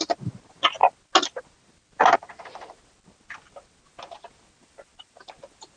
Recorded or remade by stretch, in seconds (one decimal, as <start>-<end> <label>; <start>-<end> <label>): 0.0-5.8 recorded